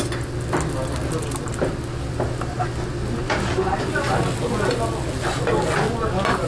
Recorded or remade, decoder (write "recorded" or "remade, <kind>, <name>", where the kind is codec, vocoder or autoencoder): recorded